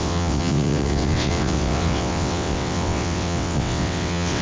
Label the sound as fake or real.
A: fake